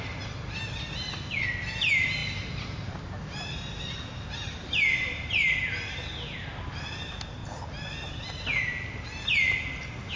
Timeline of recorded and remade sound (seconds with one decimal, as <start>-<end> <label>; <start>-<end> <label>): 0.0-10.2 recorded